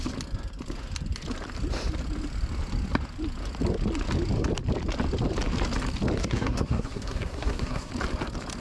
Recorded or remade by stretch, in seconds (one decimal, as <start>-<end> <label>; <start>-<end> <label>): 0.0-6.2 recorded; 6.2-7.9 remade; 7.9-8.6 recorded